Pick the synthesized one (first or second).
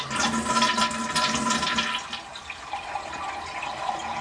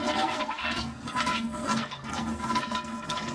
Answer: second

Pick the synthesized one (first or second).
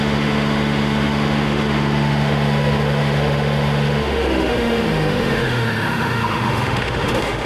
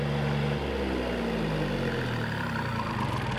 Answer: first